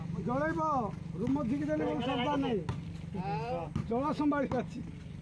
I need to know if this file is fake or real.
real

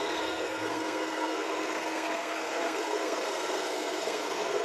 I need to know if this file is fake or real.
fake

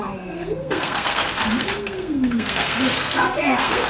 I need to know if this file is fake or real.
fake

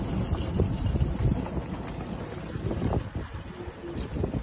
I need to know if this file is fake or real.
real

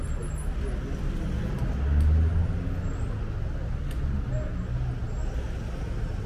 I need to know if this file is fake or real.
real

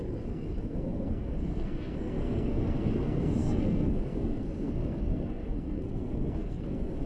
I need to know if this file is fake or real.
fake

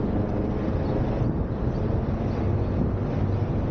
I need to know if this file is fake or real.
real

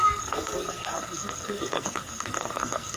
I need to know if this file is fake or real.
fake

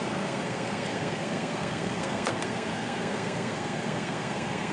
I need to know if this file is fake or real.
fake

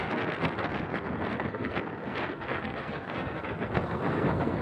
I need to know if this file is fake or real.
fake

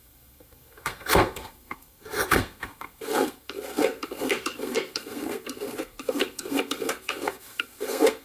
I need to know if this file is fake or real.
fake